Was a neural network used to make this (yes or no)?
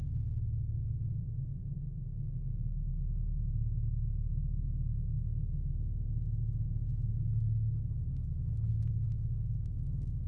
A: no